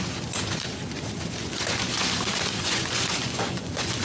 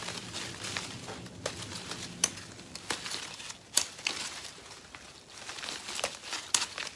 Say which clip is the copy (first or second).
first